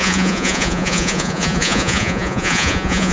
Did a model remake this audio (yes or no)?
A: yes